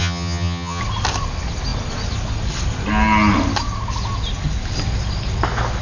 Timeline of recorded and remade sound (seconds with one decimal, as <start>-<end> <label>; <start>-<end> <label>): 0.0-0.8 remade; 0.8-5.8 recorded